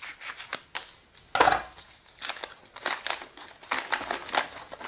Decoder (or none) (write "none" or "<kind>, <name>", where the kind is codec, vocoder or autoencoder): none